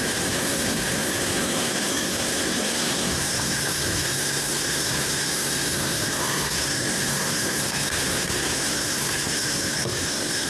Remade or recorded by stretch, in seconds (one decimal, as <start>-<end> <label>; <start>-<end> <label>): 0.0-10.5 remade